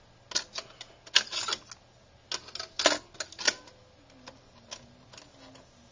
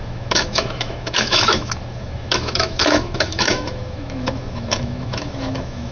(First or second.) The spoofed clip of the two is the second